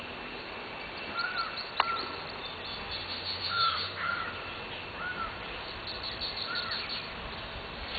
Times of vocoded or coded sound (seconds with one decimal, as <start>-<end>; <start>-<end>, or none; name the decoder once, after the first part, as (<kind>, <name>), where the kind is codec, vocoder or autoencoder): 3.0-4.2 (autoencoder, DAC-VAE)

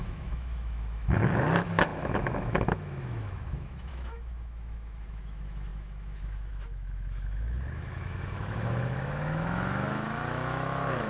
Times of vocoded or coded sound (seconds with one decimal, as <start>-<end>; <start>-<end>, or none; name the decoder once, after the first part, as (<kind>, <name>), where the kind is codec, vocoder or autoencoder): 0.0-11.1 (autoencoder, DAC-VAE)

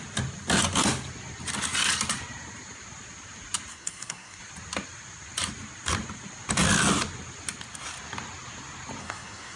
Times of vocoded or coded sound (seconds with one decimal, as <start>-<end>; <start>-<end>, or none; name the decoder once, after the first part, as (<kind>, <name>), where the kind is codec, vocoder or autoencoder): 3.7-4.4 (codec, SNAC); 9.0-9.6

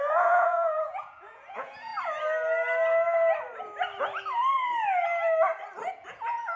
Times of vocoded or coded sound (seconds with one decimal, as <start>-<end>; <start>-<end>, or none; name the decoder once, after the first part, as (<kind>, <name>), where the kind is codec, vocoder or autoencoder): 0.0-1.9 (vocoder, Vocos); 5.9-6.6

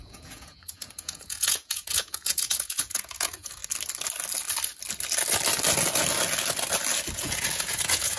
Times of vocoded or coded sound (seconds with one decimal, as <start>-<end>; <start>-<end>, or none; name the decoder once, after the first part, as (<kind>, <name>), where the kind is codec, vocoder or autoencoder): 0.0-3.6 (vocoder, Vocos); 7.1-8.2

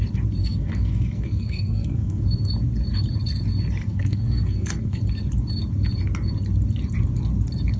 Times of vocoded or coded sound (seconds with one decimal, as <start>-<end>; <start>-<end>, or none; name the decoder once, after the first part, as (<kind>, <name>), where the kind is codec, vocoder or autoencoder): 0.4-2.2 (codec, SNAC); 3.8-5.0

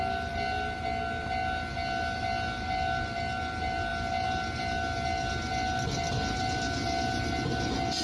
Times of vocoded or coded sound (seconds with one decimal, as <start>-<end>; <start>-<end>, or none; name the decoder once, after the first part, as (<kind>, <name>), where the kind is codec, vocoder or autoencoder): none

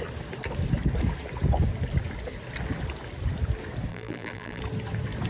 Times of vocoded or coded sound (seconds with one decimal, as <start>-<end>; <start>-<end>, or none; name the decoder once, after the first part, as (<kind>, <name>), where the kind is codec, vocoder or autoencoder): 3.9-4.6 (vocoder, BigVGAN v2)